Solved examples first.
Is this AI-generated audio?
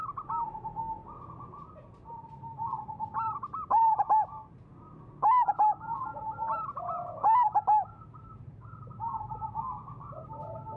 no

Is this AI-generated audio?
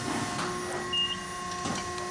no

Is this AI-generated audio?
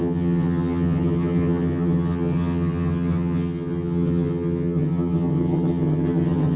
yes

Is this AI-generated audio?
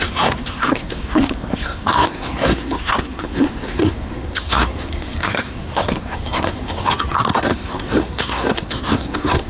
yes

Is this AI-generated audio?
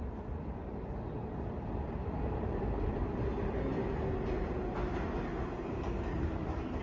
no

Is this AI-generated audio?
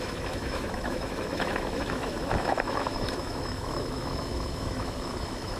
yes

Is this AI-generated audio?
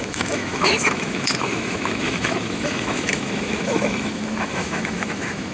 yes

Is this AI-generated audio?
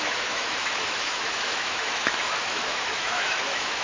yes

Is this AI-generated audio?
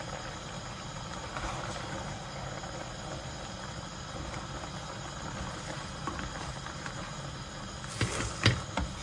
no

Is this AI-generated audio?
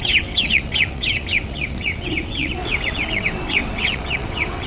yes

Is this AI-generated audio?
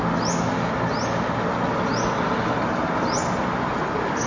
no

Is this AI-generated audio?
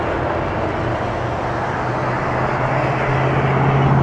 no